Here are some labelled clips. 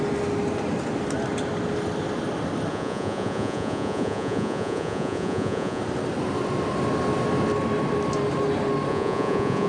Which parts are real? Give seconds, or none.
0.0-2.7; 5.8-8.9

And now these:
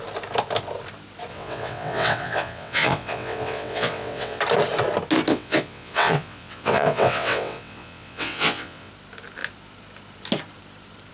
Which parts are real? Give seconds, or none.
0.0-1.3; 4.4-5.3; 8.9-11.1

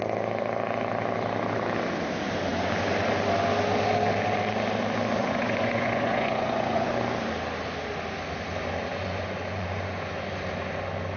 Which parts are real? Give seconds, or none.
0.0-5.2; 6.9-8.9; 10.3-11.2

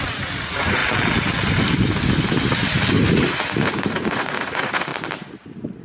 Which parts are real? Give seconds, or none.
0.8-3.1; 4.9-5.8

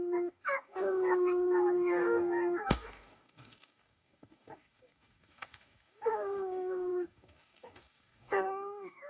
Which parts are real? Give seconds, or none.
none